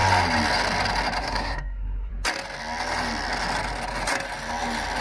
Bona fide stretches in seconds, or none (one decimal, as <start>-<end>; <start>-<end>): 0.0-1.2; 2.1-5.0